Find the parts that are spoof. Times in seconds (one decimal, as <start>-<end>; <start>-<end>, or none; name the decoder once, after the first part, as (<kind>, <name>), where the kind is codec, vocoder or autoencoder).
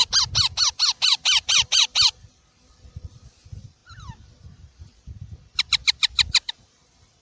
0.7-3.8 (vocoder, BigVGAN v2); 6.5-7.2